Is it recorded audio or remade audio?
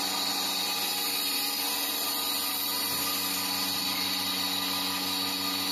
recorded